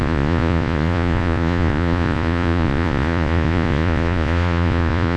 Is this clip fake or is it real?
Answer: fake